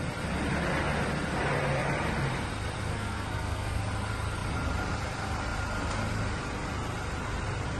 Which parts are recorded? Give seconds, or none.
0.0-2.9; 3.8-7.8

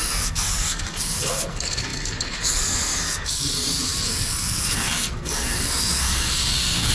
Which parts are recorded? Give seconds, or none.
none

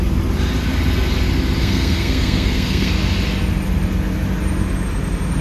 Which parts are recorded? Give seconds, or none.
0.0-1.6; 2.9-5.4

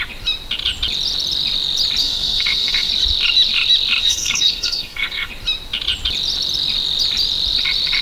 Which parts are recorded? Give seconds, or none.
0.0-2.0; 2.9-4.0; 5.3-8.0

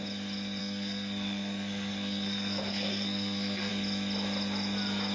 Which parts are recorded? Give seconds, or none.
0.0-0.6; 3.7-5.1

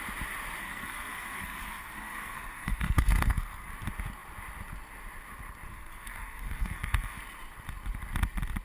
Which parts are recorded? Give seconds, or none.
0.0-0.6; 3.7-5.7; 7.2-8.6

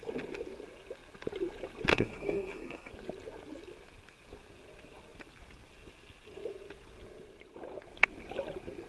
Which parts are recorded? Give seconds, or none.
0.0-1.9; 2.9-8.9